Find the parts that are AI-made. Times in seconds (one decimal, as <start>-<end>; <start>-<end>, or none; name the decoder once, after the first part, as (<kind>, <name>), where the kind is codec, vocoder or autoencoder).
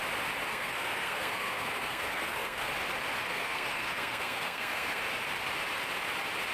0.5-2.7 (codec, SNAC); 3.3-5.0